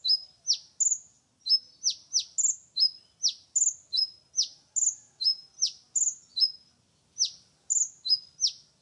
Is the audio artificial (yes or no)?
no